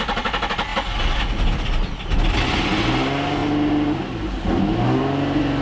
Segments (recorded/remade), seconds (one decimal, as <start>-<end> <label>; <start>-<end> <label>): 0.0-5.6 recorded